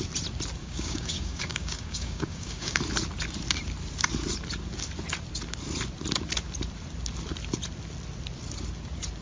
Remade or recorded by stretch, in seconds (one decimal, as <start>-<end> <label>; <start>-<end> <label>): 0.0-0.6 recorded; 0.6-2.8 remade; 2.8-9.2 recorded